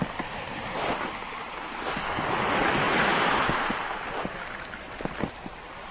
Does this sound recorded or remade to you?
recorded